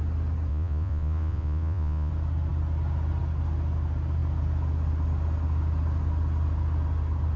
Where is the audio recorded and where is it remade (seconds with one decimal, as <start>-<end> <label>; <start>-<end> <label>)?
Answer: 0.0-0.5 recorded; 0.5-2.1 remade; 2.1-7.4 recorded